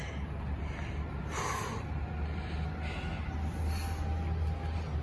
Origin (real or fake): real